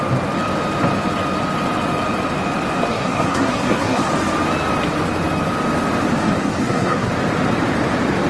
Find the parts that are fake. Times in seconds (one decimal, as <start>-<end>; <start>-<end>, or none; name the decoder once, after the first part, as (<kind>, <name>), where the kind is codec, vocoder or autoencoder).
2.9-4.1 (codec, SNAC); 6.2-7.1